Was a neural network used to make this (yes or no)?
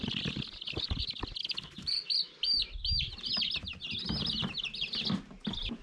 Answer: no